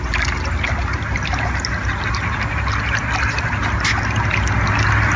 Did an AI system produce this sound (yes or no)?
no